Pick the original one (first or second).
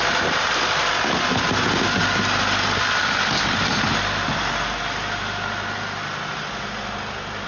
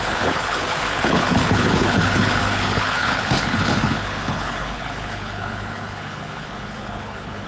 first